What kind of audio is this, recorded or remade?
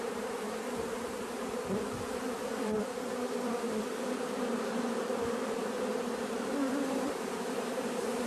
remade